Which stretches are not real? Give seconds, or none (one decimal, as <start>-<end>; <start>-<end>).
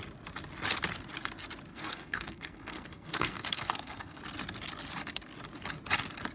1.7-4.2